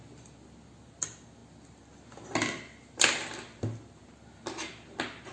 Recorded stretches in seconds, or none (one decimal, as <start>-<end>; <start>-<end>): 0.0-5.3